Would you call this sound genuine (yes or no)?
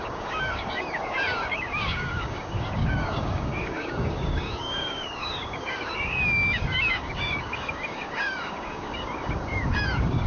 no